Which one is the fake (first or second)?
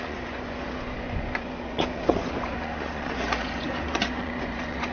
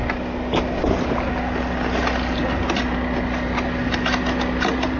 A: first